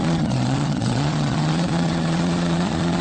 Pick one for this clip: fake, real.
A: fake